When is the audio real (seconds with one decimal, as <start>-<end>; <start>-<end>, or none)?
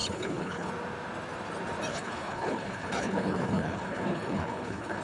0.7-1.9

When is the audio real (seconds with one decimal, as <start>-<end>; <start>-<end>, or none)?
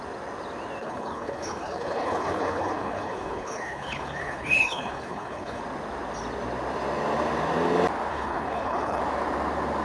0.0-0.8; 5.6-8.1; 9.0-9.8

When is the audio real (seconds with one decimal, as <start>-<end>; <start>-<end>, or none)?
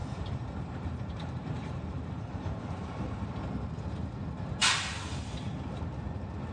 3.3-6.5